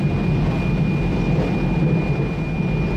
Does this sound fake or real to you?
real